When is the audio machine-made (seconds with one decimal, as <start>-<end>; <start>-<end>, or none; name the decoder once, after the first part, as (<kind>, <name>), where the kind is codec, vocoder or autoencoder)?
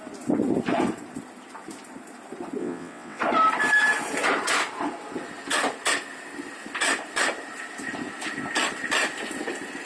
2.6-3.2 (vocoder, WaveNeXt)